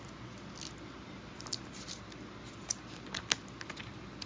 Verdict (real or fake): real